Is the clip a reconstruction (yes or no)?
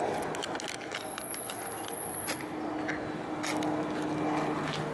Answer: no